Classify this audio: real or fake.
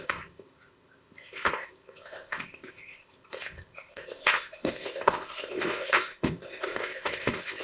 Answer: fake